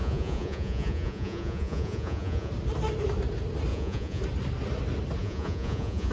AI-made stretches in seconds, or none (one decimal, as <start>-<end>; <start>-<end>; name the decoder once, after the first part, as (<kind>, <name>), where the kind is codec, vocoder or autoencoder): 0.0-2.5 (vocoder, Vocos); 3.7-4.2; 5.2-6.1